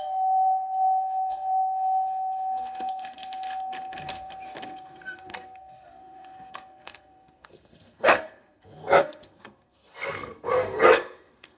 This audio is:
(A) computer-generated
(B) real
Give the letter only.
A